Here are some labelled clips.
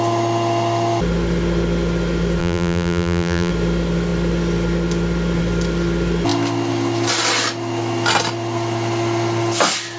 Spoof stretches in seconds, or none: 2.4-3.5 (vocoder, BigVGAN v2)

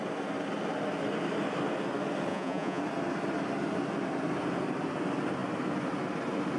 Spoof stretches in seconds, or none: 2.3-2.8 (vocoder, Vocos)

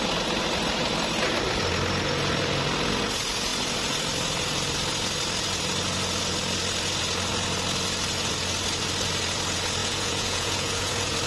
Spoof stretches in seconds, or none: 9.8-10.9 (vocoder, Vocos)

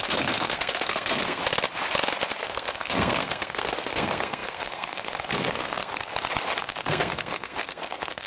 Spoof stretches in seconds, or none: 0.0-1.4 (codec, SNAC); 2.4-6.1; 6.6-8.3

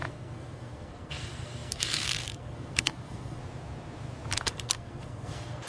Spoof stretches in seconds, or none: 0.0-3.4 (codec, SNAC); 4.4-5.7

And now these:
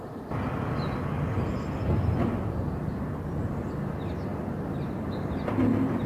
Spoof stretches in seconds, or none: none

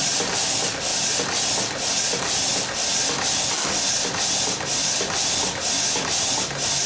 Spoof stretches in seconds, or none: none